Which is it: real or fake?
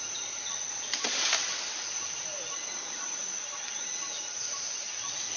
real